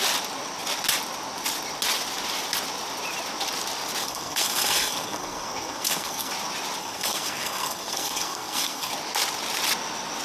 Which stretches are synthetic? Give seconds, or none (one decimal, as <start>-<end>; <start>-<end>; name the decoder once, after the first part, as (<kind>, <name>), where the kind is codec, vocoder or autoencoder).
4.0-6.3 (codec, SNAC); 6.8-8.9